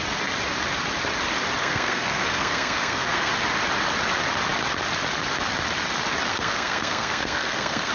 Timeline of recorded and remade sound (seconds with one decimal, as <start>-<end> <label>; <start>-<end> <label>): 0.0-1.6 recorded; 1.6-3.3 remade; 3.3-6.3 recorded; 6.3-7.9 remade

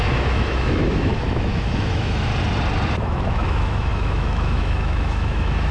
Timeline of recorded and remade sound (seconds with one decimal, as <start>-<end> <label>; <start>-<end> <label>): 0.0-2.3 remade; 2.3-3.0 recorded; 3.0-5.7 remade

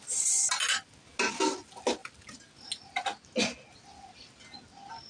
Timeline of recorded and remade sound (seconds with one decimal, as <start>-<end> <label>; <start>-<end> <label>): 0.0-5.1 recorded

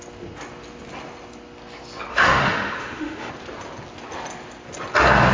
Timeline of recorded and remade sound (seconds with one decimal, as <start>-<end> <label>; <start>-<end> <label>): 0.0-2.1 recorded; 2.1-3.3 remade; 3.3-5.3 recorded

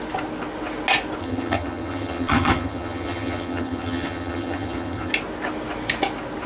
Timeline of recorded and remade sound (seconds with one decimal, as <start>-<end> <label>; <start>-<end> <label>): 0.0-1.2 recorded; 1.2-5.1 remade; 5.1-6.5 recorded

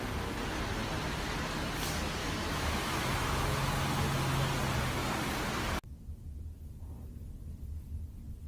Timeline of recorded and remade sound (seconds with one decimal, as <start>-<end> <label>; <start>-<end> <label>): 0.0-2.2 recorded; 2.2-3.6 remade; 3.6-8.5 recorded

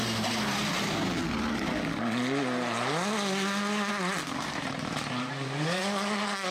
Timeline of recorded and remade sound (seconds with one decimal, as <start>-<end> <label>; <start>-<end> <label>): 0.0-3.9 recorded; 3.9-5.8 remade; 5.8-6.5 recorded

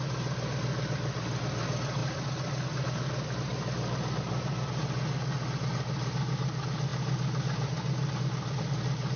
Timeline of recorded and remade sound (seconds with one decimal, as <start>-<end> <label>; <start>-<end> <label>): 0.0-9.2 recorded